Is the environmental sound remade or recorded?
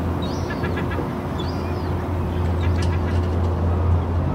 recorded